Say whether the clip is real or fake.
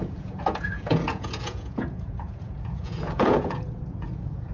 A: fake